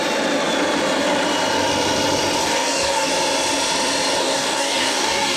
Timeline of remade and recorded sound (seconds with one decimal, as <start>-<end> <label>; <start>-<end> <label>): 0.0-2.4 recorded; 2.4-3.1 remade; 3.1-4.2 recorded; 4.2-5.4 remade

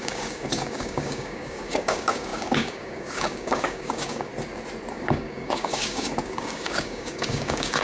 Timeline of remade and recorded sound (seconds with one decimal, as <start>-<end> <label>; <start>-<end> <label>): 0.0-4.3 remade; 4.3-4.9 recorded; 4.9-7.8 remade

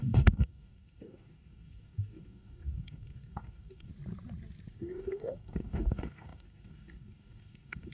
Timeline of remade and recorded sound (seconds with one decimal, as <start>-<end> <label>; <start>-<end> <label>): 0.0-3.9 remade; 3.9-4.7 recorded; 4.7-7.9 remade

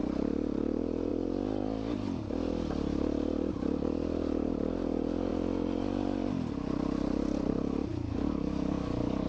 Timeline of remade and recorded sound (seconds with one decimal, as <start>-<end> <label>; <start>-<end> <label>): 0.0-7.9 recorded; 7.9-9.3 remade

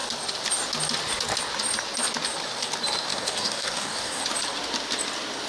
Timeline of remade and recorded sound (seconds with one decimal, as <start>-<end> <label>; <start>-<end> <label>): 0.0-3.1 recorded; 3.1-4.2 remade; 4.2-5.5 recorded

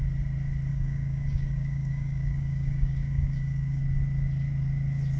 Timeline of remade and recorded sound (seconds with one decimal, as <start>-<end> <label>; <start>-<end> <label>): 0.0-0.7 recorded; 0.7-3.8 remade; 3.8-5.2 recorded